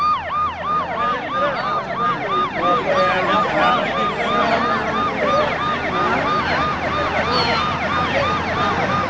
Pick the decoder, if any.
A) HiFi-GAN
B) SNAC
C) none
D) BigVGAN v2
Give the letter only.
C